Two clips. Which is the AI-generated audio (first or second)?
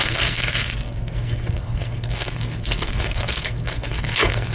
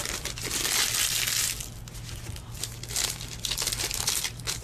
first